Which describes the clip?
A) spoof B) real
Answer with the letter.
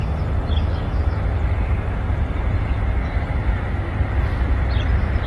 B